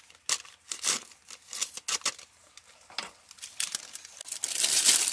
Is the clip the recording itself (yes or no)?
yes